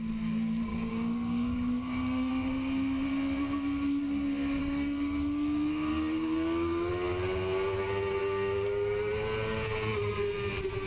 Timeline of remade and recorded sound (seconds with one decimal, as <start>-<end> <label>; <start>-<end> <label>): 0.0-0.7 recorded; 0.7-2.3 remade; 2.3-4.6 recorded; 4.6-6.9 remade; 6.9-8.2 recorded; 8.2-9.1 remade; 9.1-10.9 recorded